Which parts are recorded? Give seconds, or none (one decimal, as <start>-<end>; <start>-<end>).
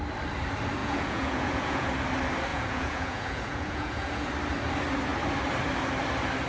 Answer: 0.0-0.8; 1.9-2.5; 4.3-6.5